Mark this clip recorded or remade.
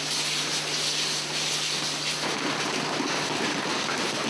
recorded